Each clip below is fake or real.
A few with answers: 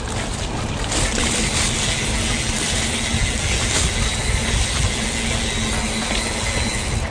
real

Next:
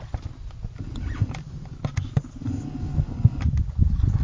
real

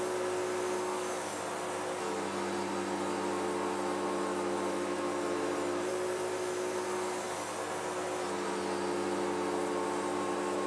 real